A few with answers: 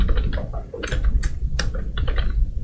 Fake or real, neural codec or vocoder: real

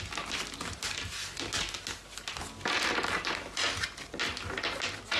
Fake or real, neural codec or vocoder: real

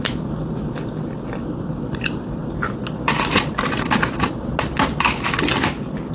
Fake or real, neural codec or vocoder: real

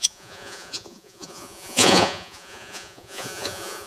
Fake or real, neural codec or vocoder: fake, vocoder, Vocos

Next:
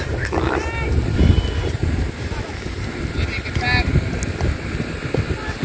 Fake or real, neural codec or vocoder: real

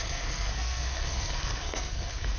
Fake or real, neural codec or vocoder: fake, codec, SNAC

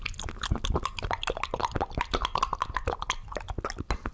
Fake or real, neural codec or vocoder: real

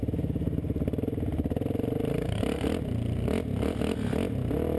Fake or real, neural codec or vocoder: real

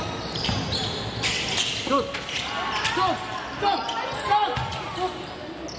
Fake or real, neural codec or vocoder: real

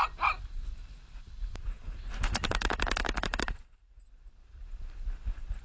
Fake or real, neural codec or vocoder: real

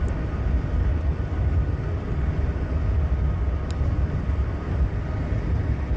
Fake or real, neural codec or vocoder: real